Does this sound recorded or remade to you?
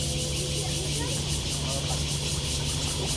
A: recorded